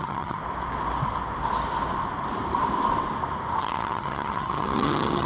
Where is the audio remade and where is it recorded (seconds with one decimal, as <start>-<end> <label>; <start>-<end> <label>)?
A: 0.0-0.4 remade; 0.4-3.6 recorded; 3.6-5.3 remade